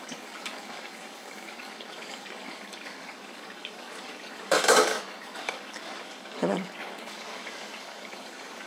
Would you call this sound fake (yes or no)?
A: yes